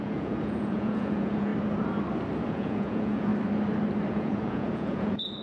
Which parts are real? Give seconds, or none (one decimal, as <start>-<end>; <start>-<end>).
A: 1.5-2.5; 3.3-4.1